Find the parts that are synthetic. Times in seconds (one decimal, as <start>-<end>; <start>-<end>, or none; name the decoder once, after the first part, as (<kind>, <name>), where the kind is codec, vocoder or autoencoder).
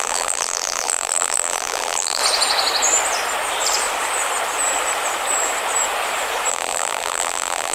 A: 0.0-2.2 (vocoder, BigVGAN v2); 6.5-7.7